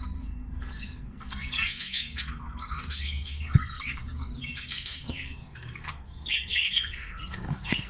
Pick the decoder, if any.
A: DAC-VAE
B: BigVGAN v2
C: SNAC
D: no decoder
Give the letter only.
C